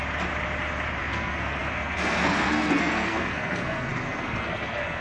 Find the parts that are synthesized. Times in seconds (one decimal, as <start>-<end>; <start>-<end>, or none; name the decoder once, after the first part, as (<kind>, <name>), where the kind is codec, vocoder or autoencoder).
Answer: 1.0-5.0 (codec, SNAC)